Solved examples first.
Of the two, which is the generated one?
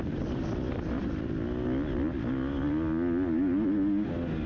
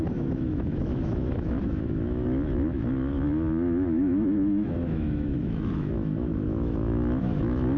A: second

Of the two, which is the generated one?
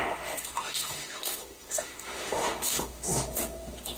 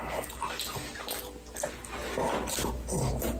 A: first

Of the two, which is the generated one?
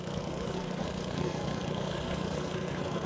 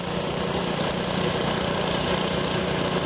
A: first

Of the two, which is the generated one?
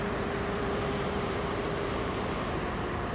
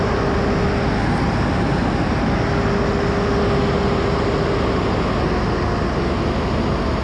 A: first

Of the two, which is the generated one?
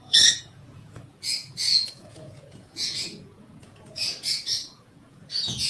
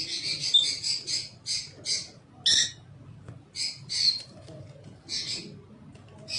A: first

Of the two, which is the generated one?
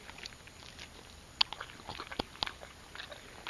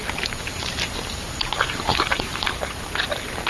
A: second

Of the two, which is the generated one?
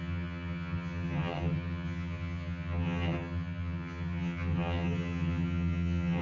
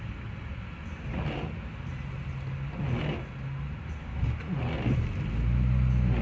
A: first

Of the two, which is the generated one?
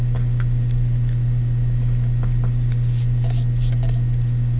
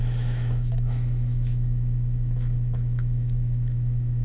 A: second